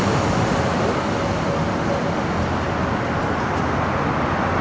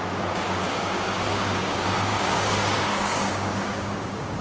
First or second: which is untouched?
first